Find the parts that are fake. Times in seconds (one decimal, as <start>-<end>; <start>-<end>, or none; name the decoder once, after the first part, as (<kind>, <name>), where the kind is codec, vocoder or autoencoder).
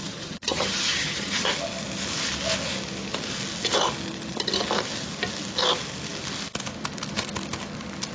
0.0-1.5 (vocoder, HiFi-GAN)